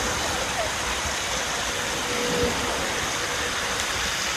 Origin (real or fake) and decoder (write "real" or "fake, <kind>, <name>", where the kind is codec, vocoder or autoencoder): real